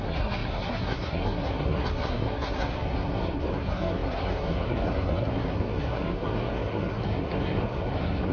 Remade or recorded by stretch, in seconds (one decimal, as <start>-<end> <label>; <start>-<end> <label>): 0.0-8.3 remade